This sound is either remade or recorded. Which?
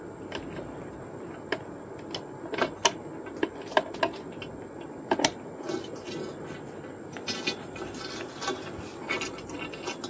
recorded